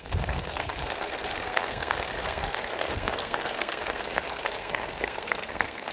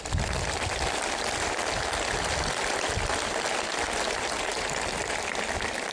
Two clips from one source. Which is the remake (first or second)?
first